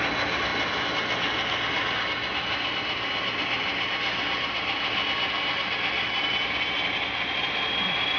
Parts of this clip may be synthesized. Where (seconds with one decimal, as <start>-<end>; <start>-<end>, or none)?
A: none